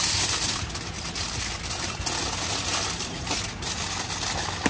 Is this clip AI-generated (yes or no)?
no